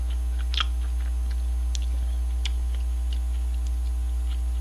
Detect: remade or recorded recorded